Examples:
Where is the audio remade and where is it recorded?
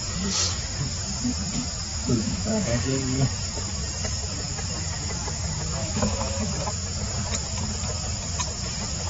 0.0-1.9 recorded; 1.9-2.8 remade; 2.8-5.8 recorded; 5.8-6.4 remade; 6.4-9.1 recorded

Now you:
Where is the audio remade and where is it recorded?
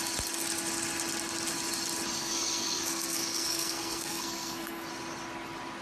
0.0-2.2 recorded; 2.2-4.9 remade; 4.9-5.8 recorded